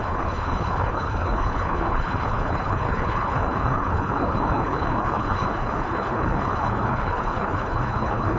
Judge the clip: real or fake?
fake